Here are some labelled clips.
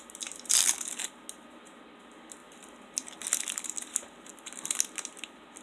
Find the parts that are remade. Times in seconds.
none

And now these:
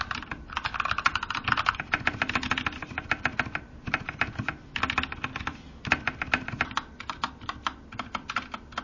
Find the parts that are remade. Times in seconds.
none

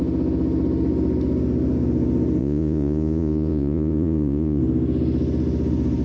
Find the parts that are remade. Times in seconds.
2.4-4.6 (vocoder, Vocos)

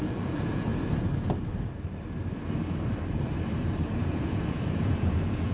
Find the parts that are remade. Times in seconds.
0.0-0.7 (vocoder, Vocos); 4.0-5.5